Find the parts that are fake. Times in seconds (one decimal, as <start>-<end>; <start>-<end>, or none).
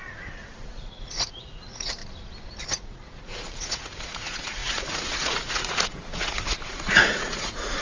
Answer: 0.0-2.0; 2.6-7.8